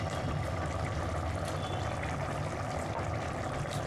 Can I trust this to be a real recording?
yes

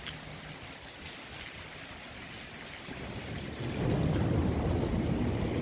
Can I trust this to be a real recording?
yes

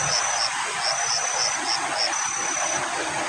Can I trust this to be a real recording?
yes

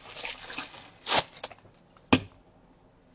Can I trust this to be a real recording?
yes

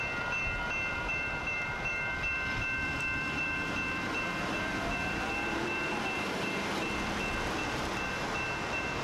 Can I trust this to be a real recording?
no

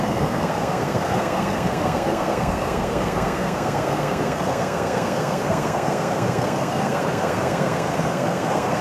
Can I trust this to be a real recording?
no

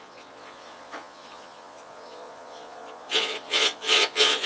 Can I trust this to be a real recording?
no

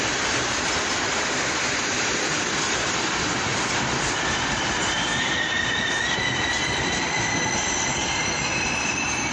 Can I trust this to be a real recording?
no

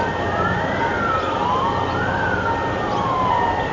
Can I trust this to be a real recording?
yes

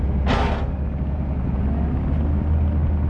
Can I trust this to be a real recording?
yes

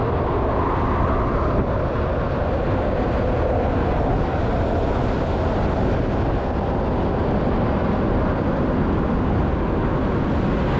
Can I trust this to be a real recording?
yes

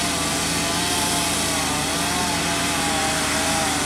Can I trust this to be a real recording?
yes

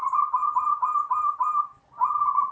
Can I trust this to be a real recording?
yes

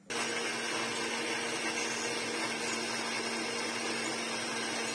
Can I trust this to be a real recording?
yes